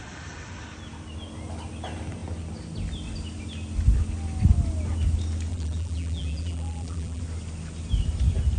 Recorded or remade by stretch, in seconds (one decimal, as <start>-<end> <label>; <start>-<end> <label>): 0.0-5.5 recorded; 5.5-7.2 remade; 7.2-8.6 recorded